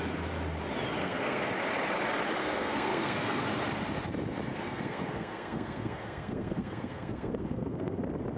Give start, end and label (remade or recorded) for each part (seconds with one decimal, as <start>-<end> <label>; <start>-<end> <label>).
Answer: 0.0-1.0 recorded; 1.0-1.5 remade; 1.5-2.4 recorded; 2.4-3.4 remade; 3.4-4.5 recorded; 4.5-8.0 remade; 8.0-8.4 recorded